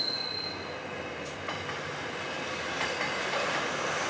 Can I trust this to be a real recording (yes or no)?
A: yes